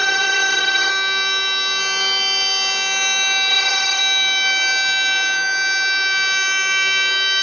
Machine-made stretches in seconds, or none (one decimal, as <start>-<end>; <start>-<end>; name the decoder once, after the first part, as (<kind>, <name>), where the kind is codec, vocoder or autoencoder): 0.0-0.9 (vocoder, HiFi-GAN); 3.5-4.0